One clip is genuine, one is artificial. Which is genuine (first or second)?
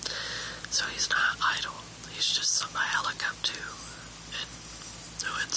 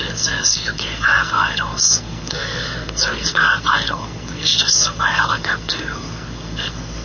first